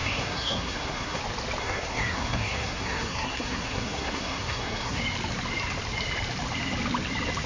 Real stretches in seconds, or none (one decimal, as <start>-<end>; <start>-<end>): 1.2-1.6; 5.0-7.5